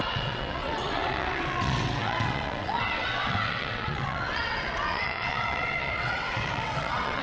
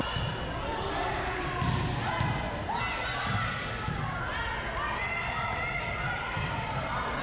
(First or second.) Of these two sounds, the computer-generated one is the first